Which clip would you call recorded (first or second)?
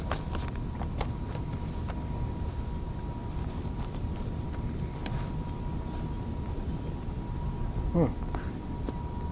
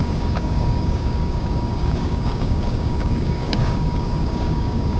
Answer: first